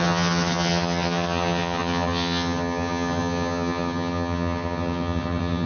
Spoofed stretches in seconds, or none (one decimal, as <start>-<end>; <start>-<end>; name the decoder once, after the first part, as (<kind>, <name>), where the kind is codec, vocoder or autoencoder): 0.0-5.7 (vocoder, HiFi-GAN)